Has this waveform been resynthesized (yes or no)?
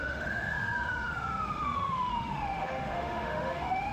yes